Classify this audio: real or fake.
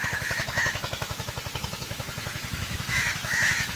fake